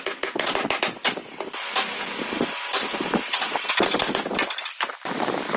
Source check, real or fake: real